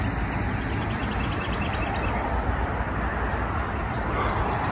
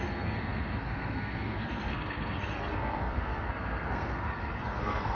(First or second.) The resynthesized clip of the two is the second